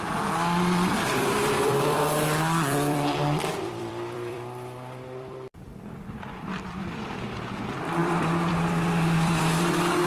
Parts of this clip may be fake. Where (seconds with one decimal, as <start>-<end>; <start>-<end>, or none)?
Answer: 0.0-10.1